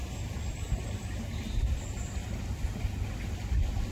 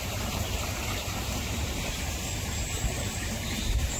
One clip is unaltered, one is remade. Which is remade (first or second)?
second